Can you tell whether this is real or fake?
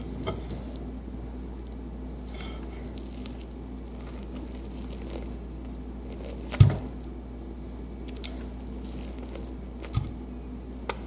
real